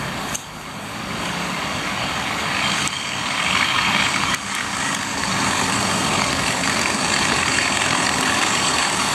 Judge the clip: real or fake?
fake